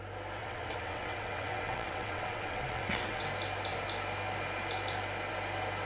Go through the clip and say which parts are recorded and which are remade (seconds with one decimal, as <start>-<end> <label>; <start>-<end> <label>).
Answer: 0.0-0.4 recorded; 0.4-3.2 remade; 3.2-5.9 recorded